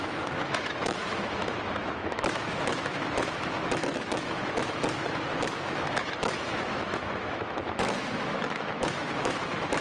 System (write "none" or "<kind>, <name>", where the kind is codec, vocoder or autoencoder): autoencoder, DAC-VAE